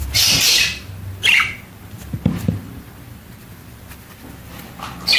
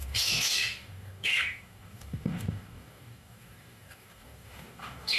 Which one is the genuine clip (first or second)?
first